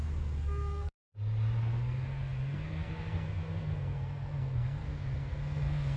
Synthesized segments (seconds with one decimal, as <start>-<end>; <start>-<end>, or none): 0.0-1.0; 1.6-6.0